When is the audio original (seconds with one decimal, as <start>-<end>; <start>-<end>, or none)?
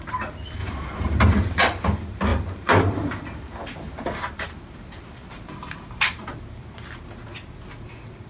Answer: 0.0-0.6; 1.6-2.3; 6.3-8.3